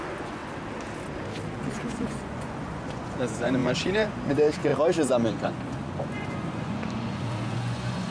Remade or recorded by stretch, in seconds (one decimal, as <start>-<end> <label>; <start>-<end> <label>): 0.0-0.4 remade; 0.4-1.6 recorded; 1.6-8.1 remade

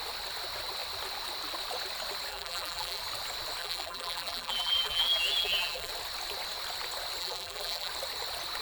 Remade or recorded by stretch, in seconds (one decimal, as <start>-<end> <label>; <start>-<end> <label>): 0.0-2.3 recorded; 2.3-3.0 remade; 3.0-3.6 recorded; 3.6-5.9 remade; 5.9-7.2 recorded; 7.2-7.9 remade; 7.9-8.6 recorded

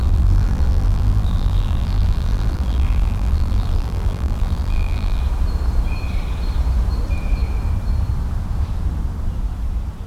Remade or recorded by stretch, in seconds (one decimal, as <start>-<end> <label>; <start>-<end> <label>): 0.0-5.2 remade; 5.2-10.1 recorded

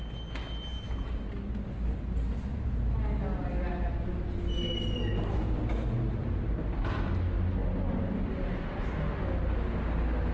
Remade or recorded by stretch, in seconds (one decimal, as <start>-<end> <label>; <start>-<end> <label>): 0.0-10.3 recorded

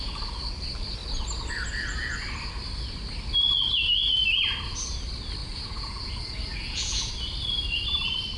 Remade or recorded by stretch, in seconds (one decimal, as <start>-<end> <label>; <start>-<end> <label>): 0.0-5.4 recorded; 5.4-7.1 remade; 7.1-8.4 recorded

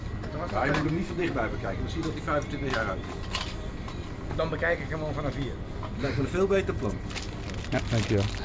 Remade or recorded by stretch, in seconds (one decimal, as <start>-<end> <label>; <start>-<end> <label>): 0.0-8.4 recorded